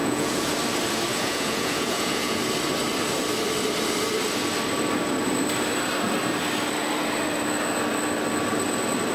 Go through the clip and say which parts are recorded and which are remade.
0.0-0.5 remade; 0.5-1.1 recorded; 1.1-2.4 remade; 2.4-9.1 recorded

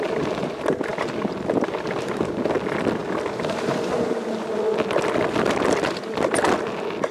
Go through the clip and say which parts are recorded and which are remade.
0.0-7.1 recorded

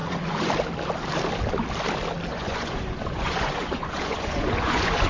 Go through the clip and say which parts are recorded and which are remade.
0.0-0.5 remade; 0.5-2.3 recorded; 2.3-5.1 remade

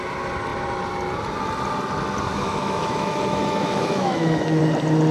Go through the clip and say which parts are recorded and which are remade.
0.0-2.3 recorded; 2.3-4.6 remade; 4.6-5.1 recorded

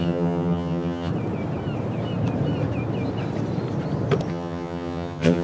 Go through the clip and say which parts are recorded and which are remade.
0.0-1.1 remade; 1.1-4.3 recorded; 4.3-5.4 remade

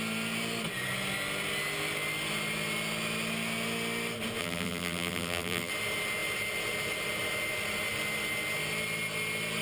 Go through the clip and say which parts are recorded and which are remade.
0.0-4.4 recorded; 4.4-5.7 remade; 5.7-9.6 recorded

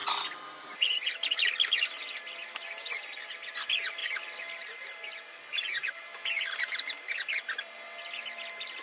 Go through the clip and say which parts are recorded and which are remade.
0.0-4.0 remade; 4.0-5.9 recorded; 5.9-8.8 remade